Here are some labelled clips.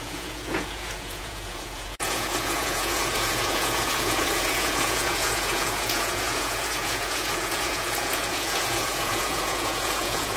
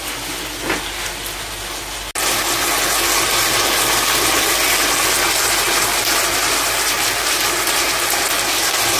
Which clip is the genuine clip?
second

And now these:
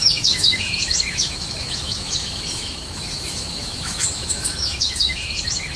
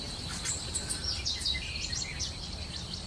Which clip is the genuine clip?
second